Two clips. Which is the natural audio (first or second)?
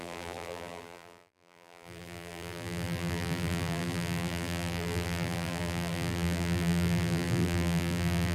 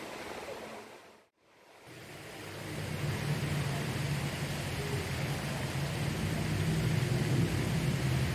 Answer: second